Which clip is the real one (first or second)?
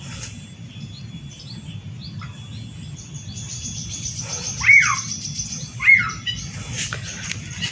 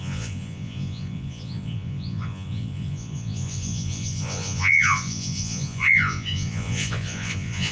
first